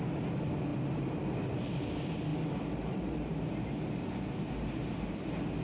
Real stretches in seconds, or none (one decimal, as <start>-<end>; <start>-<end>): 0.0-5.6